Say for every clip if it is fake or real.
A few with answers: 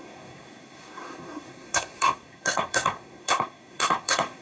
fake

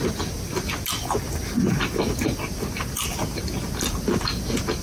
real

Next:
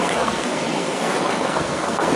fake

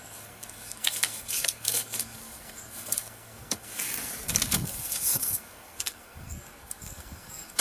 fake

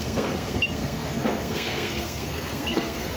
fake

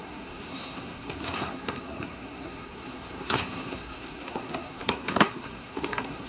fake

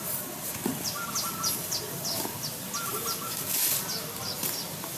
real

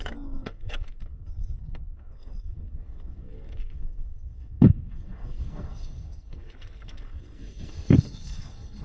fake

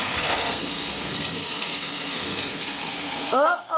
fake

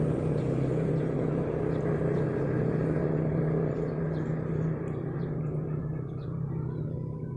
real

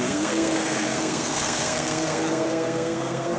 fake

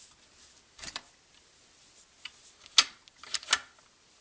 real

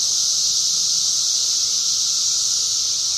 real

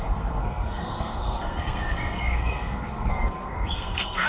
fake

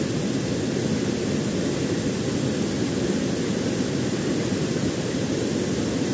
real